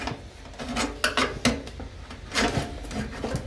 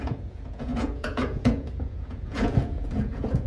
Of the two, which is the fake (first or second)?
second